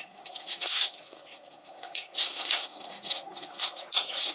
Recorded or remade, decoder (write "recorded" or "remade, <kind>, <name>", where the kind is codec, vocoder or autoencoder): remade, codec, SNAC